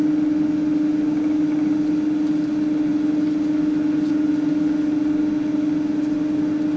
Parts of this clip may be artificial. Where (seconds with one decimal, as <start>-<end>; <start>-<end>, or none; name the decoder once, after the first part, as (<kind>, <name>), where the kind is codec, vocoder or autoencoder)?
none